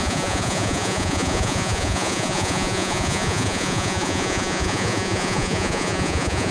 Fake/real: fake